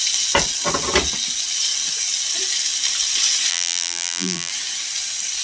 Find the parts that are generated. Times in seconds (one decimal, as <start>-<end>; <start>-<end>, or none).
3.5-4.5